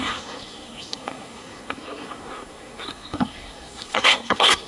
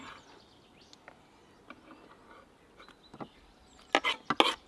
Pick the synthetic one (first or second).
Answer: first